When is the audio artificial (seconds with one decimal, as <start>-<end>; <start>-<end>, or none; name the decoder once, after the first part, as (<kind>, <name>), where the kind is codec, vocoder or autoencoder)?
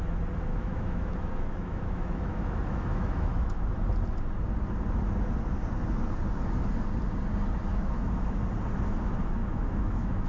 0.5-3.8 (autoencoder, DAC-VAE); 7.7-8.4; 9.4-10.3